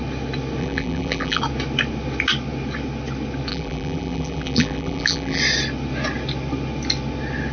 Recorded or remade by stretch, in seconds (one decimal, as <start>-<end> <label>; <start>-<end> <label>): 0.0-0.6 recorded; 0.6-1.4 remade; 1.4-3.5 recorded; 3.5-5.4 remade; 5.4-7.5 recorded